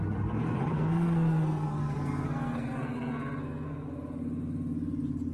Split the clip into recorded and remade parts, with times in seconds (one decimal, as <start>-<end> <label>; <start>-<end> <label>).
0.0-0.7 recorded; 0.7-3.9 remade; 3.9-5.3 recorded